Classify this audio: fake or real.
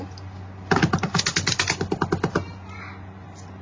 real